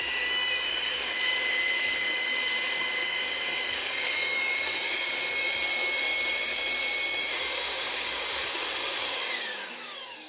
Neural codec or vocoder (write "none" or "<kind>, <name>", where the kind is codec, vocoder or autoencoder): codec, DAC